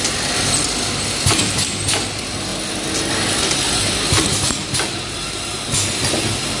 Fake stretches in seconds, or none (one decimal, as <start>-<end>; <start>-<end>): none